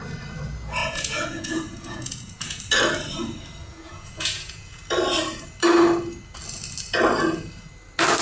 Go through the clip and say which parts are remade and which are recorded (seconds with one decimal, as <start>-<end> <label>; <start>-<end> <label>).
0.0-0.8 recorded; 0.8-2.6 remade; 2.6-3.6 recorded; 3.6-4.8 remade; 4.8-8.2 recorded